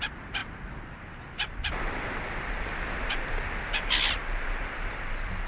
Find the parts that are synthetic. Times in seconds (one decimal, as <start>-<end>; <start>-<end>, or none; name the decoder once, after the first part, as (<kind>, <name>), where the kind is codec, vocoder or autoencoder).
none